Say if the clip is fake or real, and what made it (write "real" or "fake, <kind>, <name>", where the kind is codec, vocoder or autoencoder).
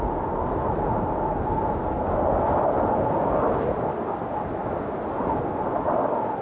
real